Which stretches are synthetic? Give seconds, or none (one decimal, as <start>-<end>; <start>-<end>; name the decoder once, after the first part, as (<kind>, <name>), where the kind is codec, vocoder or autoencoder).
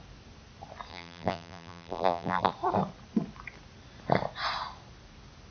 0.9-2.5 (vocoder, BigVGAN v2)